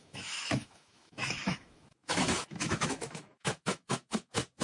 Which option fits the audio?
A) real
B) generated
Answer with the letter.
B